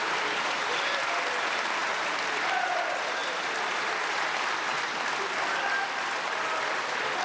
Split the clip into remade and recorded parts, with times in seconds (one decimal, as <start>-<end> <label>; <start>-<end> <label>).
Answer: 0.0-7.2 recorded